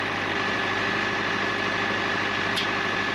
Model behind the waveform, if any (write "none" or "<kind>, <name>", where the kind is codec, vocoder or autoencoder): vocoder, BigVGAN v2